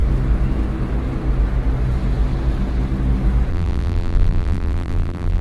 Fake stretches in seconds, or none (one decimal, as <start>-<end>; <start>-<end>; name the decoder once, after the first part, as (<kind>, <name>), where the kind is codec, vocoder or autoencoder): 3.5-5.4 (vocoder, BigVGAN v2)